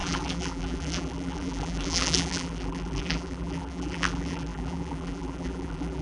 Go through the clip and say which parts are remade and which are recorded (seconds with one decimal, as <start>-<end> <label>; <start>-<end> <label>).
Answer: 0.0-6.0 remade